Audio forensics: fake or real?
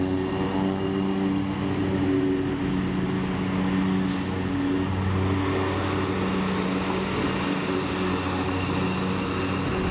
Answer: real